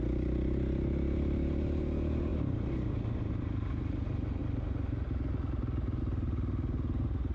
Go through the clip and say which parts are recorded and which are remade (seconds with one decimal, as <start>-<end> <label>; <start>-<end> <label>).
0.0-7.3 recorded